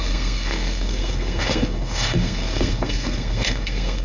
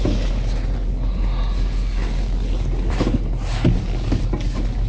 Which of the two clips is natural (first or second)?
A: second